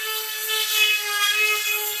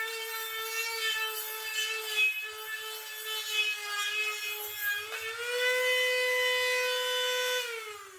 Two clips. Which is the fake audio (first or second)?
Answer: first